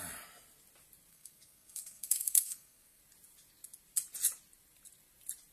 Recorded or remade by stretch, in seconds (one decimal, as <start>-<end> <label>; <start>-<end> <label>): 0.0-1.1 recorded; 1.1-3.0 remade; 3.0-5.5 recorded